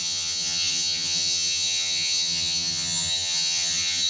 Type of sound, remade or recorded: remade